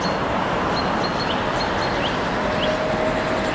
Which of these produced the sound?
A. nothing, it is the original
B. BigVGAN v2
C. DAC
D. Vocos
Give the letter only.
A